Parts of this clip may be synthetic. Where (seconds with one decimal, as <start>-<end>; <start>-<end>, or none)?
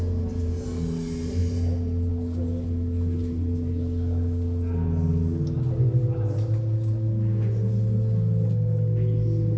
none